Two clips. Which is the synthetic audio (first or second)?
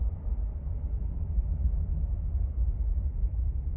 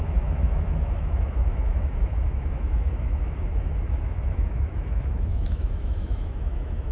second